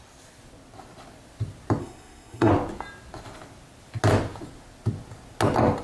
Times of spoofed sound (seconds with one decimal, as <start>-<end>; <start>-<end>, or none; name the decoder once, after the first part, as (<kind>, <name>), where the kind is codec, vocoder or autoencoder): 1.8-2.5 (codec, SNAC)